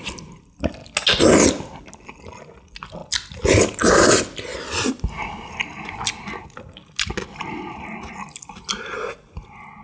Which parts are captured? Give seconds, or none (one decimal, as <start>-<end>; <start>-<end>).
0.0-9.8